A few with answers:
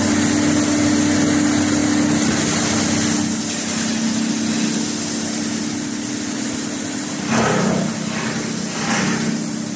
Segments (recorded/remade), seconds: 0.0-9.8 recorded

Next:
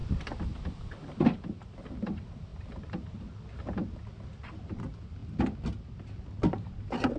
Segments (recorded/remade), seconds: 0.0-7.2 recorded

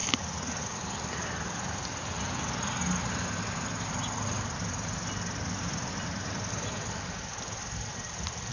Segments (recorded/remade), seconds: 0.0-8.5 recorded

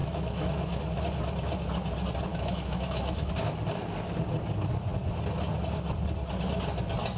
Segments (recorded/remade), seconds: 0.0-0.8 remade; 0.8-2.3 recorded; 2.3-3.3 remade; 3.3-7.2 recorded

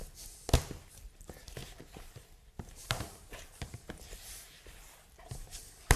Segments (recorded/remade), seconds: 0.0-1.6 recorded; 1.6-4.3 remade; 4.3-6.0 recorded

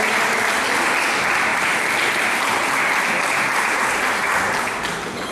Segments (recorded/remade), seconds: 0.0-1.5 recorded; 1.5-2.8 remade; 2.8-3.5 recorded; 3.5-4.3 remade; 4.3-5.3 recorded

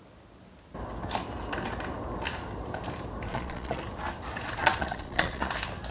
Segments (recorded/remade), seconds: 0.0-3.3 recorded; 3.3-3.8 remade; 3.8-4.6 recorded; 4.6-5.5 remade; 5.5-5.9 recorded